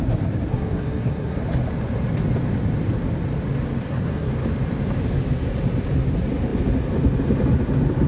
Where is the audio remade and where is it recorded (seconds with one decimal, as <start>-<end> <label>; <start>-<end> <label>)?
0.0-0.5 recorded; 0.5-1.4 remade; 1.4-3.8 recorded; 3.8-4.3 remade; 4.3-8.1 recorded